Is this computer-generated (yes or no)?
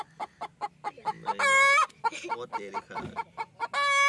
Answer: no